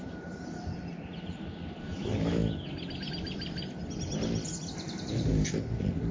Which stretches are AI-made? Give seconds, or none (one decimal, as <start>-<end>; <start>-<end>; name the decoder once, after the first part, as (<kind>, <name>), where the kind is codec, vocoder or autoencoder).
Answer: 0.0-2.4 (vocoder, BigVGAN v2); 3.1-3.8; 5.0-6.1